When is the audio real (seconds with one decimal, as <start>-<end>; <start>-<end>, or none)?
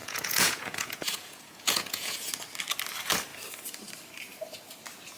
2.3-5.2